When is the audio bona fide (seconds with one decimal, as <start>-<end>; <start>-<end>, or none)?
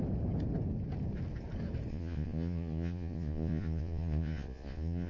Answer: 0.0-1.9